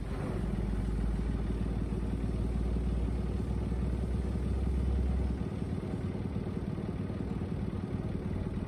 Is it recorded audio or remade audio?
recorded